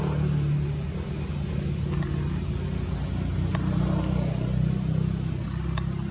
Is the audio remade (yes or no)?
no